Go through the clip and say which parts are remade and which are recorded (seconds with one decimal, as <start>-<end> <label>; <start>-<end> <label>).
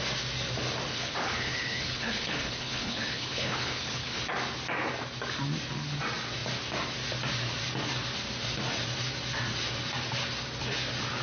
0.0-0.9 recorded; 0.9-4.2 remade; 4.2-11.2 recorded